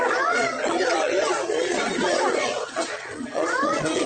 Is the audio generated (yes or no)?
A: yes